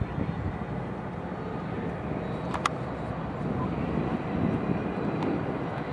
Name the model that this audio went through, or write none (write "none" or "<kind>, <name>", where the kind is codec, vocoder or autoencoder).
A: none